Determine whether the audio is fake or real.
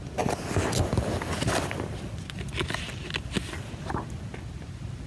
real